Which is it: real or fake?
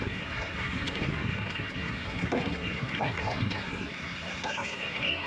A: fake